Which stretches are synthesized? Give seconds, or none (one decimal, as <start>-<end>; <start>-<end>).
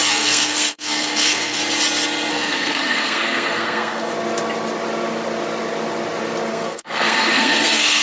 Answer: 0.0-1.6; 2.3-4.1; 6.5-8.0